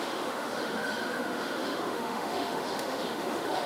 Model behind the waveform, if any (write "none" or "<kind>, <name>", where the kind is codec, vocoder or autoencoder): autoencoder, DAC-VAE